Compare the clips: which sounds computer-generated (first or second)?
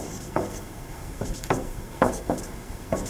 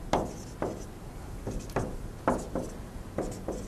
first